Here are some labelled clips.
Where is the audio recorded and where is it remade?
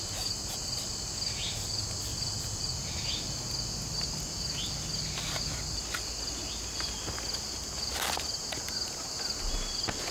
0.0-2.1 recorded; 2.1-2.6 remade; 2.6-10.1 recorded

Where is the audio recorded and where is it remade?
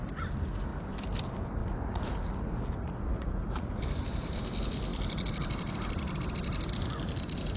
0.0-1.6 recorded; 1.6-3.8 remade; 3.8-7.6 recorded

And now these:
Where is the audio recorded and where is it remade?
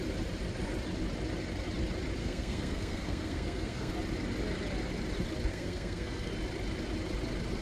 0.0-2.2 recorded; 2.2-3.9 remade; 3.9-5.5 recorded; 5.5-6.3 remade; 6.3-7.6 recorded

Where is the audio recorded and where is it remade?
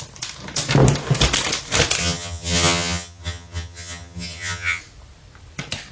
0.0-2.0 recorded; 2.0-4.8 remade; 4.8-5.9 recorded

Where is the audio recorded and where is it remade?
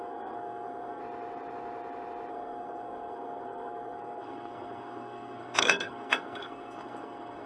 0.0-1.0 remade; 1.0-2.3 recorded; 2.3-7.5 remade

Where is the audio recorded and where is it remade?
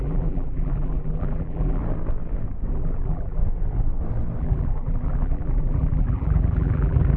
0.0-1.8 remade; 1.8-2.7 recorded; 2.7-3.4 remade; 3.4-4.4 recorded; 4.4-7.2 remade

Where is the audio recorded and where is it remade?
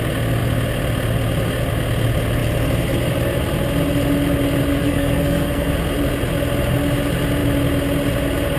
0.0-4.7 recorded; 4.7-5.7 remade; 5.7-8.6 recorded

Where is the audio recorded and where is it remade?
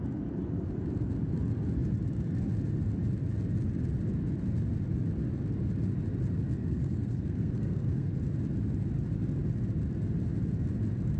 0.0-6.6 recorded; 6.6-8.1 remade; 8.1-11.2 recorded